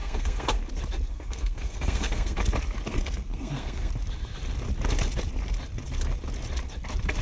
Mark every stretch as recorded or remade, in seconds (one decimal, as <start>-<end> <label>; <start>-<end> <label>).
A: 0.0-0.6 remade; 0.6-1.1 recorded; 1.1-2.4 remade; 2.4-2.9 recorded; 2.9-3.9 remade; 3.9-7.2 recorded